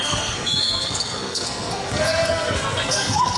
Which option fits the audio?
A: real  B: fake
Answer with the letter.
B